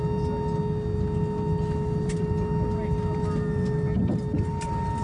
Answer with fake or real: real